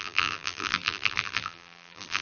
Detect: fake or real fake